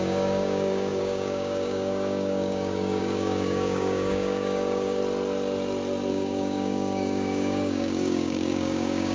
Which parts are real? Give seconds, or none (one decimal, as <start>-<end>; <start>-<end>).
5.0-6.1